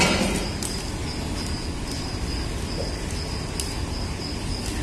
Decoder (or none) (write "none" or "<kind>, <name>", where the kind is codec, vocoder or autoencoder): none